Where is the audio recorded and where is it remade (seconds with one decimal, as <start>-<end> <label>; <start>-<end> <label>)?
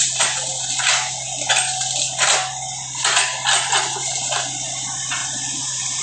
0.0-6.0 recorded